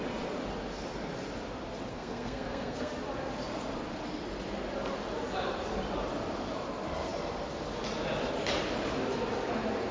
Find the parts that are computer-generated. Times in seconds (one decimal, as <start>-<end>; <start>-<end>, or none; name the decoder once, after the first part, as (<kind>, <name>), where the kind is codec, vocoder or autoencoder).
1.9-2.9 (codec, SNAC)